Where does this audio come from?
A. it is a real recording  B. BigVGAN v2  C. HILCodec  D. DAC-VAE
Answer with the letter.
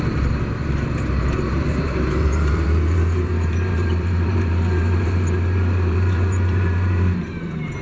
B